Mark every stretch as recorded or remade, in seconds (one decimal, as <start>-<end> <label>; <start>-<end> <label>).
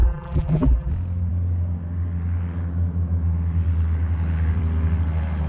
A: 0.0-0.9 remade; 0.9-5.5 recorded